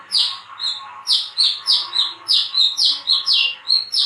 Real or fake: real